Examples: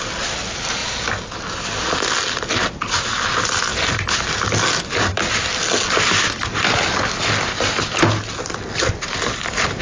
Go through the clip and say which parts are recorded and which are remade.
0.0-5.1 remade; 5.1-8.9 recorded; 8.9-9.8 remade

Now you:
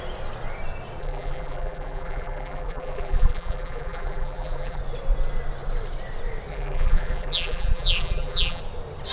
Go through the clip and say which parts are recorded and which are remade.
0.0-1.0 recorded; 1.0-4.8 remade; 4.8-6.5 recorded; 6.5-8.6 remade; 8.6-9.1 recorded

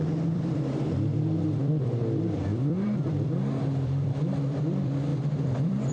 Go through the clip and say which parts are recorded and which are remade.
0.0-5.9 remade

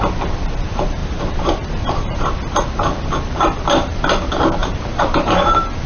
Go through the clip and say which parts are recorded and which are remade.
0.0-1.0 recorded; 1.0-2.2 remade; 2.2-4.6 recorded; 4.6-5.9 remade

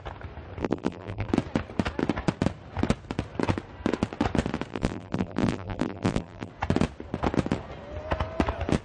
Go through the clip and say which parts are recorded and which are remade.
0.0-0.6 recorded; 0.6-1.3 remade; 1.3-4.7 recorded; 4.7-6.5 remade; 6.5-8.8 recorded